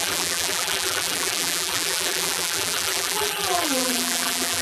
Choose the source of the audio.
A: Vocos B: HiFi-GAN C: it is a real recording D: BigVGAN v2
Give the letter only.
D